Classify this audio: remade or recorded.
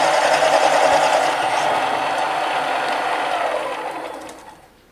recorded